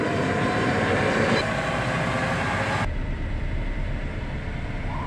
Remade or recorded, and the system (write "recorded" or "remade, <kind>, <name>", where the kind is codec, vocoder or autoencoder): recorded